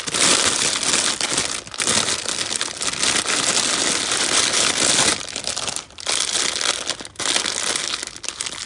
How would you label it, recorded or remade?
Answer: recorded